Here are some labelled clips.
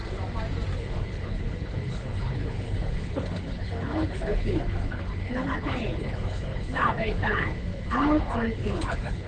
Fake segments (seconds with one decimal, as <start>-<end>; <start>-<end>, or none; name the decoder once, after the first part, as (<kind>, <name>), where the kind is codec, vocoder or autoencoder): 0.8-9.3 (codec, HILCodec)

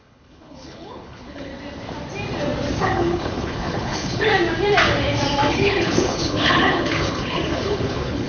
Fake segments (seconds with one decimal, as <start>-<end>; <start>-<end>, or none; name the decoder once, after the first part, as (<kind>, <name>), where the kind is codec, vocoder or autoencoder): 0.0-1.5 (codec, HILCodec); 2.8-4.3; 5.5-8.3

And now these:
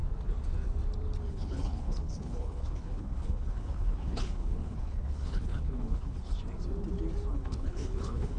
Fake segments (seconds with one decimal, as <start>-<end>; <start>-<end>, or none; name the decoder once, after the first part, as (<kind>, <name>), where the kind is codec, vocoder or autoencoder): 1.3-6.3 (codec, HILCodec); 7.3-8.4

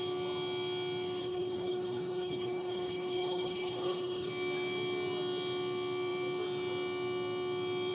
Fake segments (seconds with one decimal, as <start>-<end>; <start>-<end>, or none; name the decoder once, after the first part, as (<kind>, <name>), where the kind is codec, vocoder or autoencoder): 1.2-4.3 (codec, HILCodec)